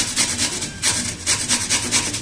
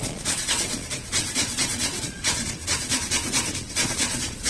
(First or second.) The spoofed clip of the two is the second